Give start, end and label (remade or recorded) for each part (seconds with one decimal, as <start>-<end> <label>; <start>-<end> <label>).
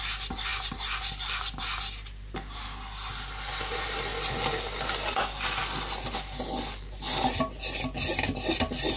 0.0-9.0 recorded